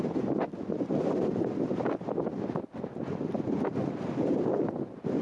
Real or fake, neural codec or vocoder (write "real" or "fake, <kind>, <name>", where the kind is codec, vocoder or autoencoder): real